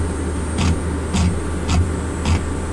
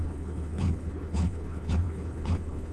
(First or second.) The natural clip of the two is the first